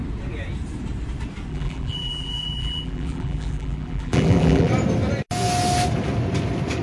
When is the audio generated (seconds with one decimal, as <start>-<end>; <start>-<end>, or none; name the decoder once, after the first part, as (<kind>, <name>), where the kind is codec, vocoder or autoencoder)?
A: 1.5-4.7 (vocoder, BigVGAN v2)